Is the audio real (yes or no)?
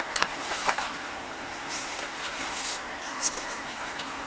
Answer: no